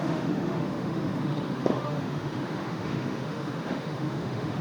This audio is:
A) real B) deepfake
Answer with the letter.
B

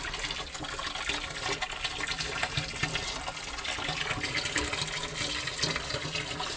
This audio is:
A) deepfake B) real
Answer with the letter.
B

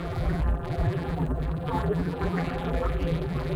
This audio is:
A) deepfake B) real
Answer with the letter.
A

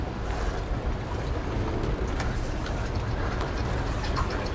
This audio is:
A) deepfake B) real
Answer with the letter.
B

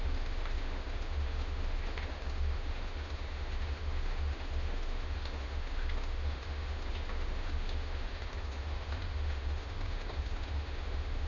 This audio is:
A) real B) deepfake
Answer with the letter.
B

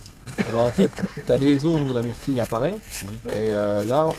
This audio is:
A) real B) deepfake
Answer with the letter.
B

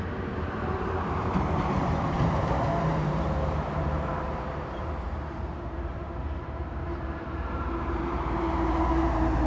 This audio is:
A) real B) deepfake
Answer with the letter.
B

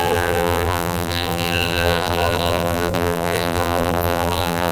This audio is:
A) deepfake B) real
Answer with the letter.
A